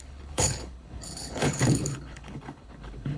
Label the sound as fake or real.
fake